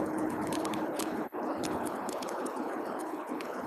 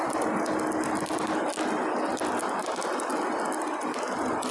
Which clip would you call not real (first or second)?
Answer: first